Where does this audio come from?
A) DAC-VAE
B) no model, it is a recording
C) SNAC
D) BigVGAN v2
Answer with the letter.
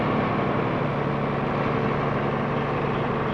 B